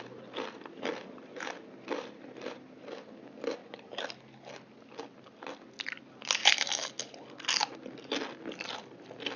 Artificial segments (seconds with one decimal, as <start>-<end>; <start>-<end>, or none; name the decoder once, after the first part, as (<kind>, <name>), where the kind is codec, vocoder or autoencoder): 6.4-6.9 (autoencoder, DAC-VAE)

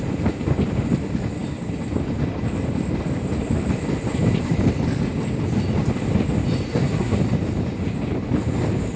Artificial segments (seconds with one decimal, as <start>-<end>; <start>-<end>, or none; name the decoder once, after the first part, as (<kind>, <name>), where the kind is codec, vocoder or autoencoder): 6.7-7.2 (codec, SNAC)

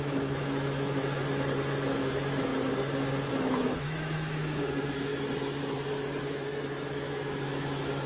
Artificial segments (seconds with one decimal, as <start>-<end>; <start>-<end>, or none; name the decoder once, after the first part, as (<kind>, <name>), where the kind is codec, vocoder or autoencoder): 0.0-1.2 (autoencoder, DAC-VAE); 2.0-2.5; 3.3-5.1; 6.2-8.1

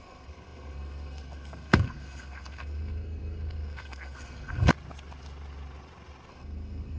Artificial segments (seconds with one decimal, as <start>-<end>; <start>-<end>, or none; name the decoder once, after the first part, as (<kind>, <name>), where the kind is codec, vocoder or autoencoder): 0.0-4.7 (codec, SNAC); 6.3-7.0